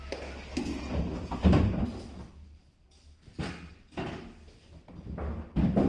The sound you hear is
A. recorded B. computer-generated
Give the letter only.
A